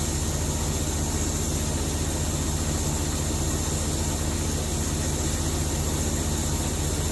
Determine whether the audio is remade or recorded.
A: recorded